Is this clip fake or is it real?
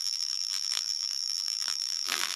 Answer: fake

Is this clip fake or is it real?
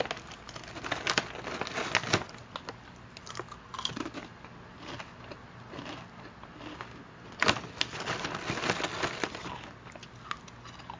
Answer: real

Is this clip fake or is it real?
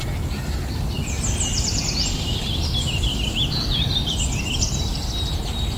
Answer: fake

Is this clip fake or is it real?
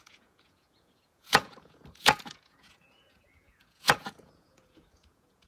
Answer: fake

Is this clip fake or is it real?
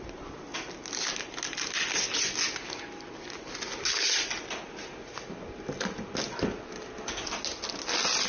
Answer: real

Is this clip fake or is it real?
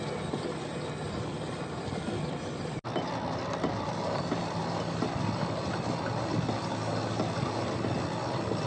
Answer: real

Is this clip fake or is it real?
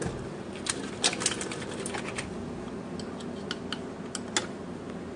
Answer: real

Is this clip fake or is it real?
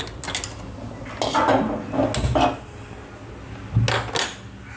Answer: real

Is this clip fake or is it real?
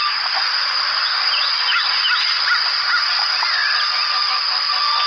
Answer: real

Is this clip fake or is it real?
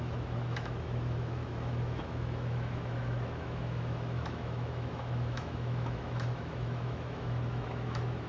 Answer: fake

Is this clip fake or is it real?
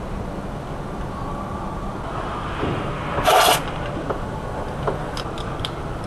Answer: real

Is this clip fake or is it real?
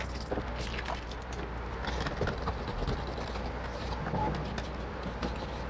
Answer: real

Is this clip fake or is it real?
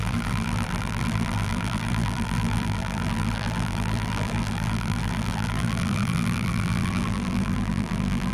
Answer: fake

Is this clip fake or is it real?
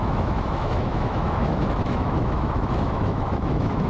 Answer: fake